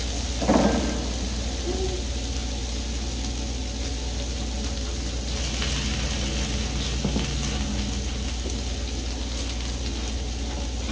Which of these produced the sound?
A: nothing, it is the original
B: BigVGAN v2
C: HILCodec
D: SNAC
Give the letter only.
A